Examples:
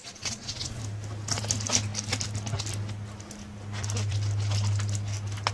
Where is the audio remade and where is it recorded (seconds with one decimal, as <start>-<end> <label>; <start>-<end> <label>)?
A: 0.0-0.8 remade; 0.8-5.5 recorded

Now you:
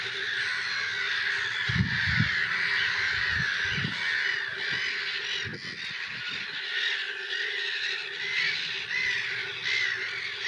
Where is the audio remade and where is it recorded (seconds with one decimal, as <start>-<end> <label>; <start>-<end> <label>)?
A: 0.0-10.5 recorded

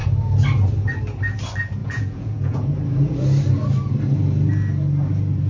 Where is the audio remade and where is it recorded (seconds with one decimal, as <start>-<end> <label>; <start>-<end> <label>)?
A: 0.0-1.8 recorded; 1.8-2.7 remade; 2.7-5.5 recorded

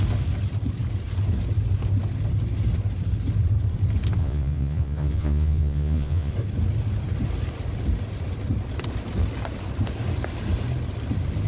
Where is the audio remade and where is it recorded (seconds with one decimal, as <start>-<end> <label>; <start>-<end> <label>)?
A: 0.0-4.2 recorded; 4.2-6.3 remade; 6.3-11.5 recorded

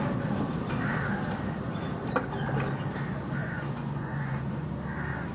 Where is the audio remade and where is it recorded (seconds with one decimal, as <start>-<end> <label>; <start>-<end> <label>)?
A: 0.0-3.4 recorded; 3.4-4.7 remade; 4.7-5.3 recorded

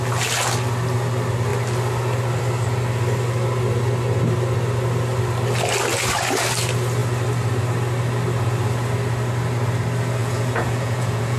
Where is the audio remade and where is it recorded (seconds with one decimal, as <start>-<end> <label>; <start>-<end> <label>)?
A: 0.0-10.2 recorded; 10.2-11.4 remade

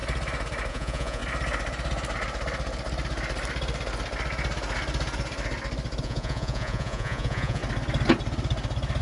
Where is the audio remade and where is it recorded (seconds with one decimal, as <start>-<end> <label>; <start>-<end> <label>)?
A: 0.0-0.7 recorded; 0.7-1.2 remade; 1.2-6.0 recorded; 6.0-7.6 remade; 7.6-9.0 recorded